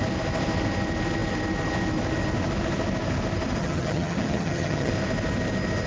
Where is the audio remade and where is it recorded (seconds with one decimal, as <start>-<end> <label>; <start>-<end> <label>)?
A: 0.0-3.6 recorded; 3.6-4.9 remade; 4.9-5.9 recorded